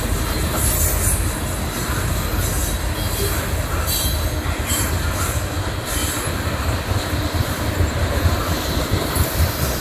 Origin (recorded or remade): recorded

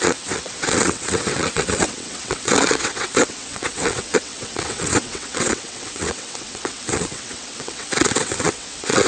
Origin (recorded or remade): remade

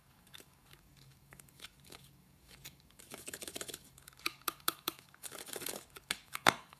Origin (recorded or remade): remade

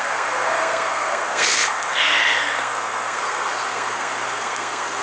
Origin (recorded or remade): remade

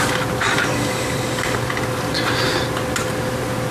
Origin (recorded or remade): recorded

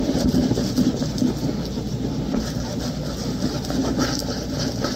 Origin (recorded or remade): recorded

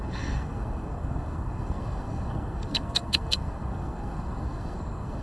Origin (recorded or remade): remade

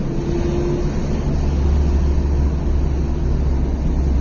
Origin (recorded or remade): recorded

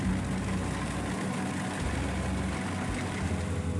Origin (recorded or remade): recorded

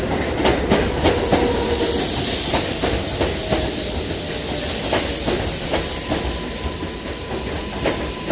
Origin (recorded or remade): recorded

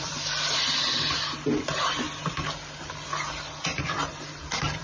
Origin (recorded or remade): recorded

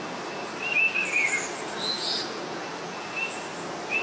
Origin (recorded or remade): recorded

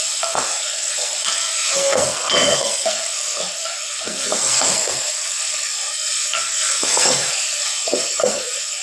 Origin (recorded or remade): remade